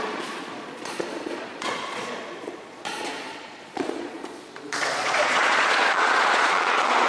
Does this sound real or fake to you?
fake